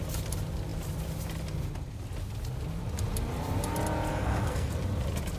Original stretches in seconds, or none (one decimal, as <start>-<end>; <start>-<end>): 0.0-4.1; 4.7-5.4